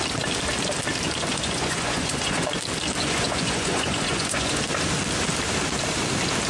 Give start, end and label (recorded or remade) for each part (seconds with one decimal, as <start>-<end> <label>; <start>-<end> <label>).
0.0-1.3 recorded; 1.3-2.6 remade; 2.6-3.0 recorded; 3.0-4.6 remade; 4.6-6.5 recorded